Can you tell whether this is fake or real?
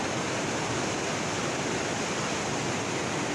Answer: real